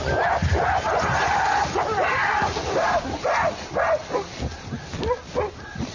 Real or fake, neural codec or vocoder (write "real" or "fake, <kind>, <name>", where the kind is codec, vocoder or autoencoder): real